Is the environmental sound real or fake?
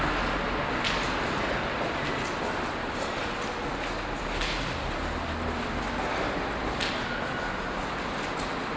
real